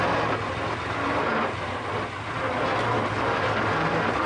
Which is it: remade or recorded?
recorded